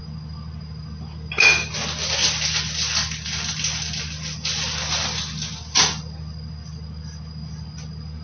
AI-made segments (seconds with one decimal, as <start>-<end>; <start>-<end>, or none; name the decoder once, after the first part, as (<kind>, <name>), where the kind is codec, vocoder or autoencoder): none